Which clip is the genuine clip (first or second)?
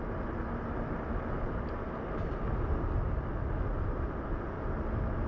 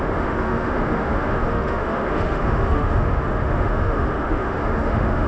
first